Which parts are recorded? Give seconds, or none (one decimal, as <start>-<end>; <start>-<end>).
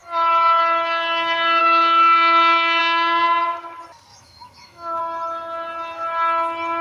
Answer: 0.0-1.6; 2.8-4.1; 5.0-6.8